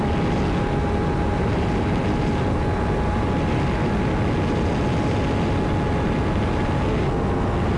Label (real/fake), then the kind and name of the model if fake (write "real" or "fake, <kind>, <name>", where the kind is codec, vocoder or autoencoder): real